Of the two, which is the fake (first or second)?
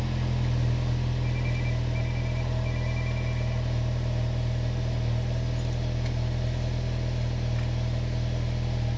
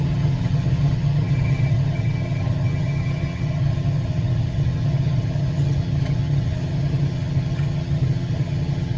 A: second